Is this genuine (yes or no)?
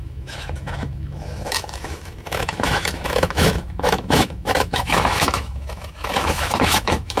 no